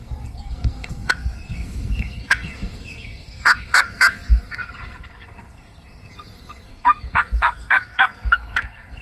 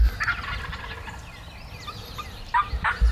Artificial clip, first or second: first